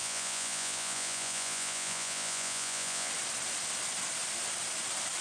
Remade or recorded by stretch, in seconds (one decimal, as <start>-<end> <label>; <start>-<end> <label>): 0.0-3.1 remade; 3.1-5.2 recorded